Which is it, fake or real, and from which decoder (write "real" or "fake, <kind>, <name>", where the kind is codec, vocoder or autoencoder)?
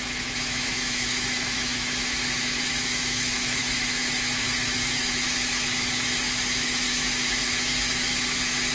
fake, autoencoder, DAC-VAE